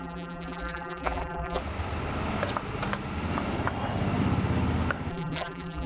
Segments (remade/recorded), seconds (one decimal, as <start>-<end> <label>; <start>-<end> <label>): 0.0-1.6 remade; 1.6-5.1 recorded; 5.1-5.9 remade